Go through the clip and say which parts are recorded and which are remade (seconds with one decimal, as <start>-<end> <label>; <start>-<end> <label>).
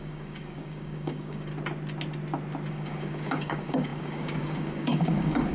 0.0-1.5 remade; 1.5-2.7 recorded; 2.7-5.5 remade